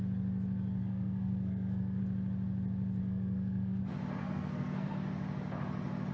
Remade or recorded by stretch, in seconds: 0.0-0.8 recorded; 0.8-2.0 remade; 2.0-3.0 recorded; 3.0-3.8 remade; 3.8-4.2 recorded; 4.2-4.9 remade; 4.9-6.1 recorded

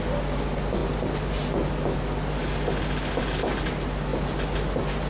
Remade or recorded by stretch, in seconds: 0.0-5.1 recorded

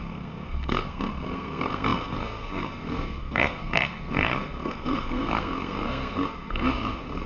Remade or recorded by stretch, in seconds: 0.0-7.3 remade

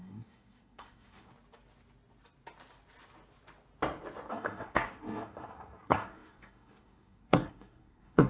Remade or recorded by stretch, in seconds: 0.0-1.3 remade; 1.3-4.3 recorded; 4.3-8.3 remade

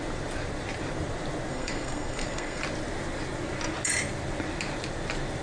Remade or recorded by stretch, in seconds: 0.0-1.5 recorded; 1.5-2.6 remade; 2.6-5.4 recorded

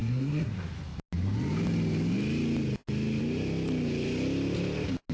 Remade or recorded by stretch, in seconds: 0.0-0.5 remade; 0.5-5.1 recorded

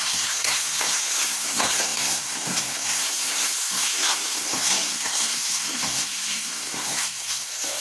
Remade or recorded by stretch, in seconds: 0.0-7.8 remade